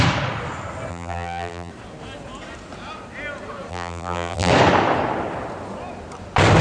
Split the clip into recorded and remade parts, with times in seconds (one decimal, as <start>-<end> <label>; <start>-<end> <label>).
0.0-0.9 recorded; 0.9-1.7 remade; 1.7-3.7 recorded; 3.7-4.5 remade; 4.5-6.6 recorded